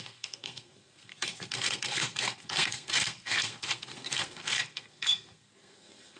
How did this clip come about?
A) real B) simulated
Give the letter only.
B